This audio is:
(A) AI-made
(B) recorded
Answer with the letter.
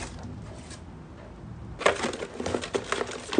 B